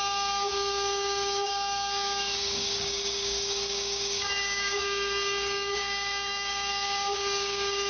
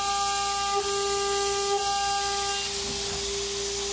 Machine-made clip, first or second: first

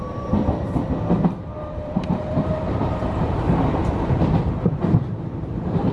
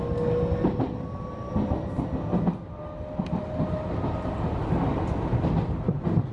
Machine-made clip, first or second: first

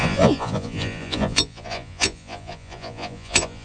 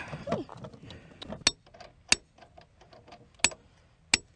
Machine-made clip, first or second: first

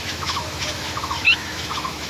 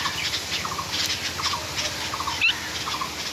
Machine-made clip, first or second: first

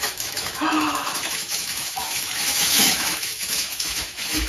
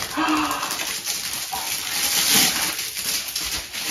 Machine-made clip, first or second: first